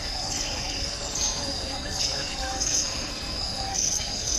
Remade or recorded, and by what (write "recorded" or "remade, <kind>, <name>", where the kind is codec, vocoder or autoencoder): remade, codec, SNAC